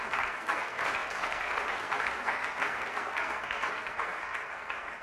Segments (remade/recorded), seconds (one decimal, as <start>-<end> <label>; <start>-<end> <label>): 0.0-5.0 remade